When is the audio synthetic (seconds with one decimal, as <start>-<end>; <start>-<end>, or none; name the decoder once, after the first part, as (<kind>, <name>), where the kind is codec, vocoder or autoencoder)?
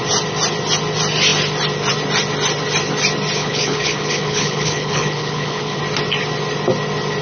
3.4-5.8 (codec, HILCodec)